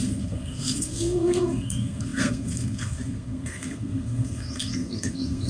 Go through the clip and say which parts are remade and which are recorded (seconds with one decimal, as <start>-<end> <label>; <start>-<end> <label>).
0.0-5.5 remade